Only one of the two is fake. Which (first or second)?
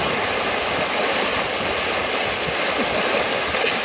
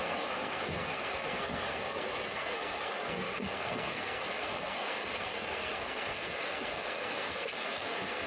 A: second